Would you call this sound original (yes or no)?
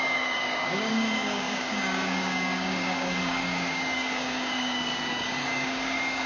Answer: no